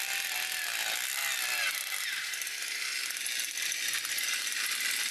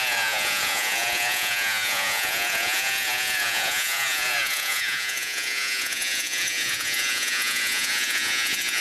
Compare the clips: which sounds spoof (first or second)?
second